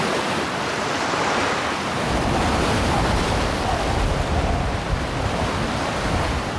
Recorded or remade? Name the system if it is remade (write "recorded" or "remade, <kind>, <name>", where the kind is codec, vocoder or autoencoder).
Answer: recorded